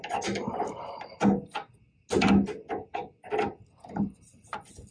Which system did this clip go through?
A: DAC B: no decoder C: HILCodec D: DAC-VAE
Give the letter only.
B